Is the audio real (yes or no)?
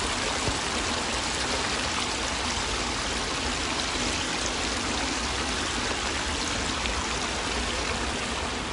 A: yes